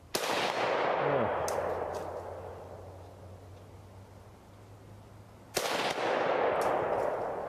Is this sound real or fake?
real